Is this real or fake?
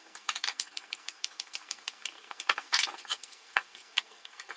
fake